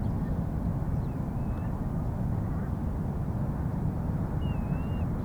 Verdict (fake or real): real